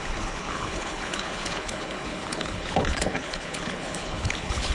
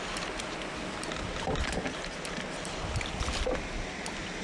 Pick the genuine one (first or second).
second